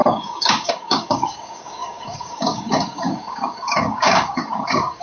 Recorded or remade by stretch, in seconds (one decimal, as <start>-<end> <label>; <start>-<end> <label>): 0.0-5.0 remade